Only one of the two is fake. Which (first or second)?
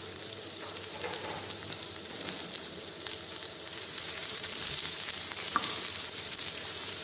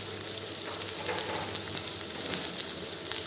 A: first